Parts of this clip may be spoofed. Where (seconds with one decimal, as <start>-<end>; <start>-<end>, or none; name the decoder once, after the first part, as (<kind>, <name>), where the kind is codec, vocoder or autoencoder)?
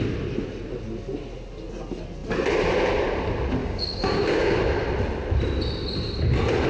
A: 3.6-4.6 (codec, DAC)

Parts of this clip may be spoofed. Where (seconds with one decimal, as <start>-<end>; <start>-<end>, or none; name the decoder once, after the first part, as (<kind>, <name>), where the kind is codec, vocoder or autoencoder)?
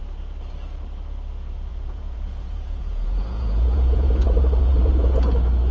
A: 1.7-5.1 (vocoder, Vocos)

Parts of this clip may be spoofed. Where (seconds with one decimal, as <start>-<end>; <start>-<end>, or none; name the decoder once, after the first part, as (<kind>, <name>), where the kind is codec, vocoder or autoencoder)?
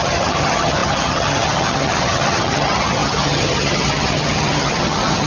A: 0.0-5.3 (vocoder, HiFi-GAN)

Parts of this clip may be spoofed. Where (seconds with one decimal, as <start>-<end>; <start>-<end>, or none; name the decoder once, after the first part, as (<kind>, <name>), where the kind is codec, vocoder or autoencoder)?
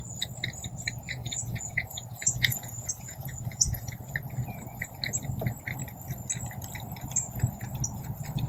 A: 1.2-3.9 (vocoder, Vocos)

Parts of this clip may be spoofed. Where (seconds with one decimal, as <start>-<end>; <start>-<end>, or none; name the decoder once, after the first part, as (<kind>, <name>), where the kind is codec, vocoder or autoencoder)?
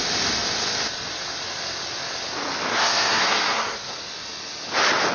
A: 2.7-3.9 (codec, SNAC)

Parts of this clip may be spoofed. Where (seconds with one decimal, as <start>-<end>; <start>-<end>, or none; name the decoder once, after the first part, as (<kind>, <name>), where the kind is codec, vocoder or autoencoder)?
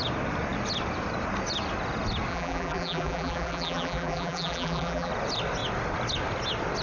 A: 2.3-5.1 (vocoder, BigVGAN v2)